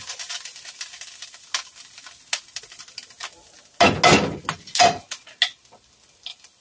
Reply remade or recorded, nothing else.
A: recorded